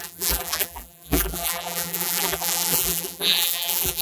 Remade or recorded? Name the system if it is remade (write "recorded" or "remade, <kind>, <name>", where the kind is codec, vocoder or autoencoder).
remade, vocoder, BigVGAN v2